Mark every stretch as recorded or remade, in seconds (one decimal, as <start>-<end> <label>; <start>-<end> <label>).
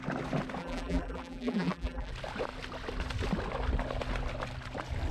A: 0.0-0.6 recorded; 0.6-2.1 remade; 2.1-5.1 recorded